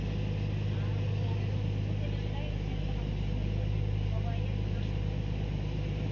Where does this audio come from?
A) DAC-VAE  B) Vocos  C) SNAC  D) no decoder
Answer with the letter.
D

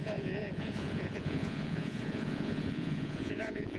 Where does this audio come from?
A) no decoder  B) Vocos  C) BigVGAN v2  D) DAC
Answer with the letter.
B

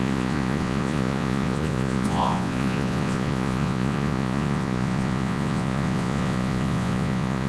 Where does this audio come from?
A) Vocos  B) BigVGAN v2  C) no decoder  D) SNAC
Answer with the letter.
A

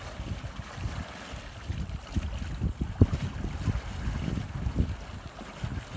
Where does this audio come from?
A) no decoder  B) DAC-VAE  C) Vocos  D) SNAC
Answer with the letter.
A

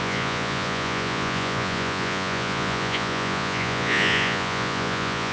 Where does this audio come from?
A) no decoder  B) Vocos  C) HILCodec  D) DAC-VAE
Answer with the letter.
B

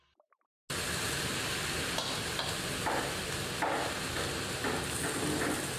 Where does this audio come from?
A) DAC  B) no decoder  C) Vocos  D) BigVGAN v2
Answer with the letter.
B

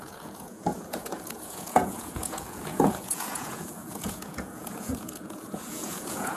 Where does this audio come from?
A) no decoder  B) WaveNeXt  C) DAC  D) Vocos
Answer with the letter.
D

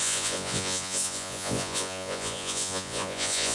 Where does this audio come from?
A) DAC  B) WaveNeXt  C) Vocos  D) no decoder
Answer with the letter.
C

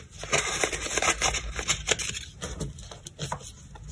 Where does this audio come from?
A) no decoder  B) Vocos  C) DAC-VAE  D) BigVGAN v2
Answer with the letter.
A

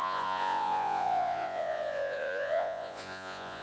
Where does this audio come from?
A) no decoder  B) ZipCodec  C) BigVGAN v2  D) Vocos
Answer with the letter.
D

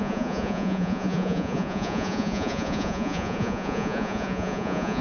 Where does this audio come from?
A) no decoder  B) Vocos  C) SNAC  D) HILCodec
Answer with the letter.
B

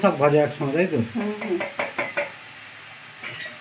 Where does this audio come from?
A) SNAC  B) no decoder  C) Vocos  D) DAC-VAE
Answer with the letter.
B